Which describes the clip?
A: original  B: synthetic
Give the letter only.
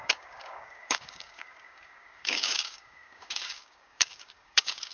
B